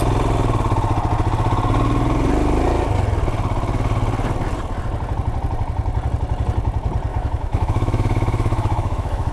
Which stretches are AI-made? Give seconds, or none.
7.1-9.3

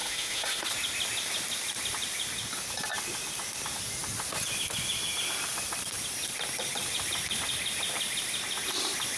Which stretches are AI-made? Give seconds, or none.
0.0-0.6